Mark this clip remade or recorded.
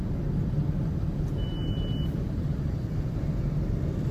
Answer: recorded